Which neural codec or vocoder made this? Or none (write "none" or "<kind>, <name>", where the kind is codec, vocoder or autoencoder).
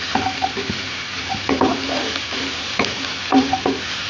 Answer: none